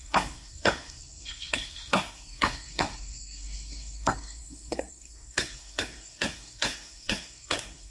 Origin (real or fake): fake